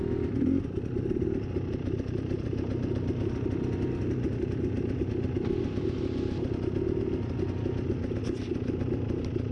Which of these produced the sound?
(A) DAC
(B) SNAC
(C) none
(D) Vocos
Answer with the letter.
C